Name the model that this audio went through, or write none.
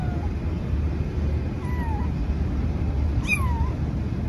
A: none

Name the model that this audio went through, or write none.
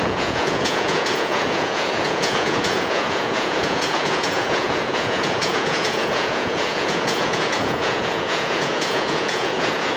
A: vocoder, Vocos